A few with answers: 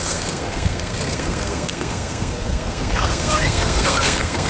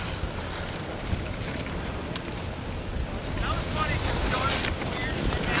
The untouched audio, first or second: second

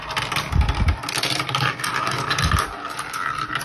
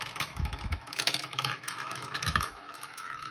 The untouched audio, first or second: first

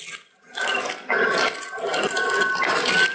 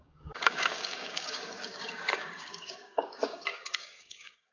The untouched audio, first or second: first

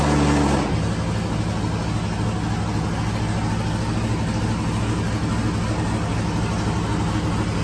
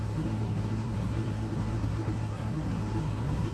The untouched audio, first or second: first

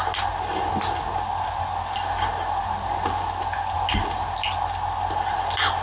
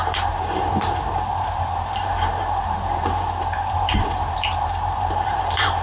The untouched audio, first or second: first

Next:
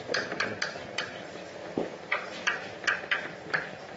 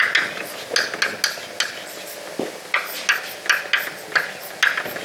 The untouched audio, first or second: second